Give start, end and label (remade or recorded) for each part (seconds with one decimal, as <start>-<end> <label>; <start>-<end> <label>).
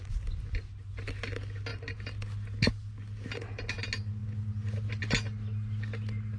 0.0-6.4 recorded